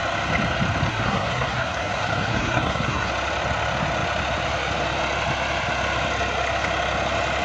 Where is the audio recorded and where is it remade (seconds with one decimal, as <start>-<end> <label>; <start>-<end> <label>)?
0.0-0.9 recorded; 0.9-3.1 remade; 3.1-7.4 recorded

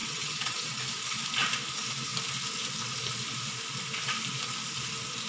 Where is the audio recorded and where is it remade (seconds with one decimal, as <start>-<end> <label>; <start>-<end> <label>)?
0.0-0.8 remade; 0.8-5.3 recorded

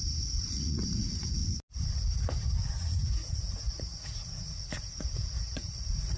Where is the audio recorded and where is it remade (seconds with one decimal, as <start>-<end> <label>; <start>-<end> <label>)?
0.0-1.4 remade; 1.4-2.7 recorded; 2.7-6.2 remade

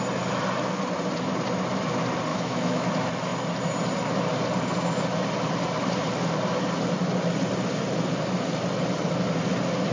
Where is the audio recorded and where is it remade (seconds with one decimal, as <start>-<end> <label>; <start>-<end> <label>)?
0.0-2.3 recorded; 2.3-2.9 remade; 2.9-9.9 recorded

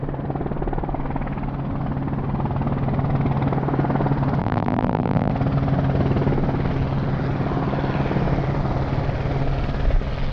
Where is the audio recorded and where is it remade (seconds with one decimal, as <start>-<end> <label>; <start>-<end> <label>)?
0.0-4.4 recorded; 4.4-5.3 remade; 5.3-10.3 recorded

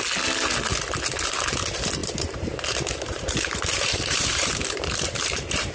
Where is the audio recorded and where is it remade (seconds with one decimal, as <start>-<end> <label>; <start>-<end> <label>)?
0.0-2.0 recorded; 2.0-5.7 remade